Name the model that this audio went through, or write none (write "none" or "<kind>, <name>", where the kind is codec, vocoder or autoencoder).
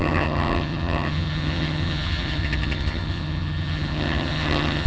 vocoder, HiFi-GAN